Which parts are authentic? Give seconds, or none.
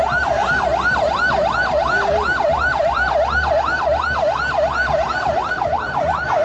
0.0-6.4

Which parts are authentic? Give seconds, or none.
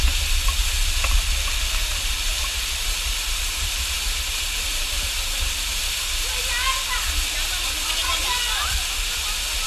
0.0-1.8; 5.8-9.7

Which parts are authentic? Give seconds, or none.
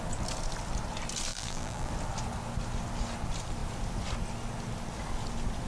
0.0-1.3; 1.9-5.7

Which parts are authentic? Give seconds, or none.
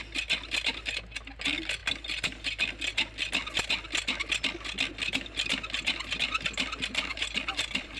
0.0-7.1